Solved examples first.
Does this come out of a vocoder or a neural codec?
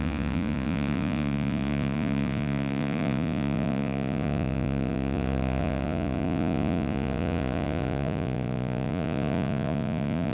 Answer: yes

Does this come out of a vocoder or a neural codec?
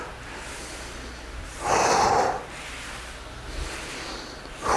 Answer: no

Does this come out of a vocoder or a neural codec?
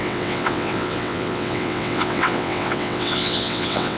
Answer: yes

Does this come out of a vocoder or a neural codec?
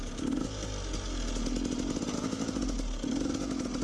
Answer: no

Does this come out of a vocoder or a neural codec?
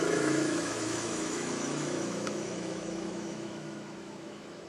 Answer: yes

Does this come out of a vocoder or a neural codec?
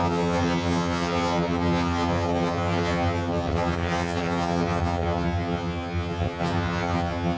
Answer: yes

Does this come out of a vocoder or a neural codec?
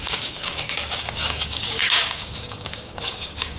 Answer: yes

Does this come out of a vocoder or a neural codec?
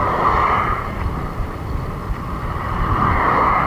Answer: no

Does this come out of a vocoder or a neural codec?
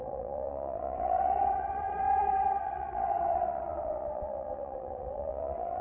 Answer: yes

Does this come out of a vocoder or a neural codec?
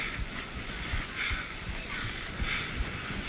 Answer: yes